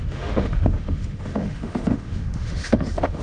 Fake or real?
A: fake